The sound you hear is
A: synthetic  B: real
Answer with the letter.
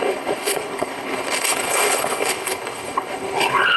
A